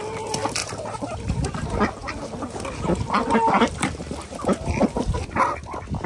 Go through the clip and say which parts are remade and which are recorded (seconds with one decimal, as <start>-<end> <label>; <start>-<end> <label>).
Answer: 0.0-0.6 recorded; 0.6-1.2 remade; 1.2-6.1 recorded

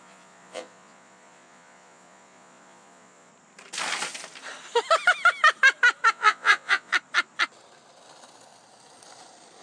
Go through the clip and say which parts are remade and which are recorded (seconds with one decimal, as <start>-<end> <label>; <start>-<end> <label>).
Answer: 0.0-3.3 remade; 3.3-6.1 recorded; 6.1-6.9 remade; 6.9-9.6 recorded